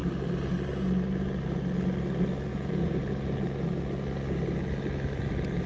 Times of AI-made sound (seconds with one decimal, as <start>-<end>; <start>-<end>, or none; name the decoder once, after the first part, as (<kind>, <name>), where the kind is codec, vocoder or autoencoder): 2.5-3.0 (vocoder, Vocos)